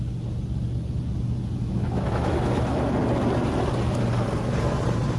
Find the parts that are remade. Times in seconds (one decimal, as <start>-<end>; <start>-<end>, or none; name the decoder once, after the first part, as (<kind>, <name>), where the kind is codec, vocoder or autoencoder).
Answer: 1.4-3.0 (autoencoder, DAC-VAE)